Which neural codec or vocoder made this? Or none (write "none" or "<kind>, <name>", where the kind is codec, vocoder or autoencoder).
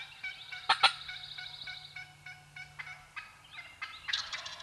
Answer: none